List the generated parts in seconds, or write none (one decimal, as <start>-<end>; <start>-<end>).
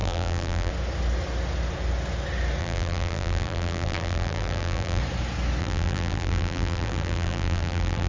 0.0-0.7; 2.6-5.0; 5.6-8.1